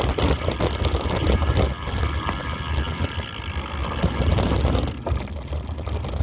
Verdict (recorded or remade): recorded